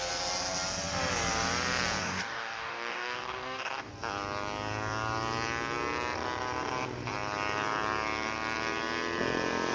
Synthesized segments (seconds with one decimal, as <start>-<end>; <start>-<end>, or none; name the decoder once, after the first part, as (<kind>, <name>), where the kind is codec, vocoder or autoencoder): 2.0-3.9 (codec, DAC)